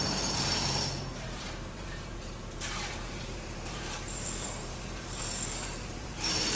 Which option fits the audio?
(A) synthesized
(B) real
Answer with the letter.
A